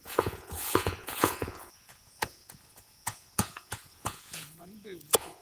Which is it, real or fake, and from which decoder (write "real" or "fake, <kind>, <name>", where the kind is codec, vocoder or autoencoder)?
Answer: fake, vocoder, Vocos